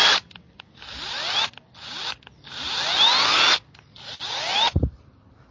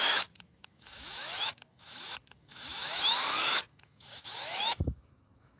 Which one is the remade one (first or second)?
second